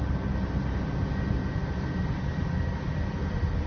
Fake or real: real